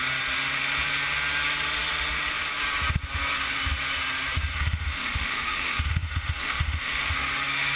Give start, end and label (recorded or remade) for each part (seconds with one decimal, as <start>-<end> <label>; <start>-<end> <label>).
0.0-4.5 recorded; 4.5-7.1 remade; 7.1-7.8 recorded